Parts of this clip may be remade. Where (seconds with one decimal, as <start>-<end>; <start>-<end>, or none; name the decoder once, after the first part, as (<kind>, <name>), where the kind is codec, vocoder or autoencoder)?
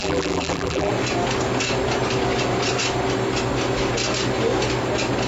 0.0-0.9 (vocoder, BigVGAN v2)